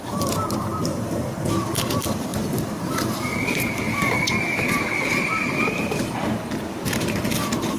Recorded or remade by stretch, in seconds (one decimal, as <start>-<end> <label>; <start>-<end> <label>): 0.0-2.3 recorded; 2.3-6.0 remade; 6.0-7.8 recorded